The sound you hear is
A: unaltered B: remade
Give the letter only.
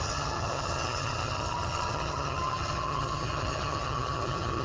B